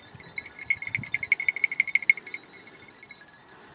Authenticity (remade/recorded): recorded